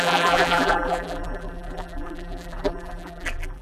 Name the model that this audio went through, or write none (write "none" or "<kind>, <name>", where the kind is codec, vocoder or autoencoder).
vocoder, BigVGAN v2